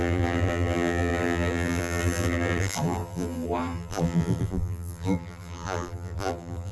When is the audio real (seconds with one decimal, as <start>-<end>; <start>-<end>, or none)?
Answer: none